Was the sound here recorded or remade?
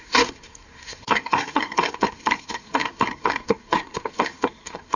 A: remade